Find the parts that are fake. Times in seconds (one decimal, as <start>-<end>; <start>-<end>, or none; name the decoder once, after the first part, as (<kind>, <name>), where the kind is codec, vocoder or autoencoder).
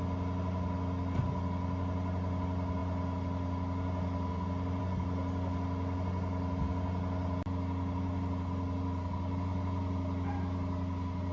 none